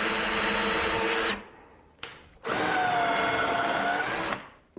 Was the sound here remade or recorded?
recorded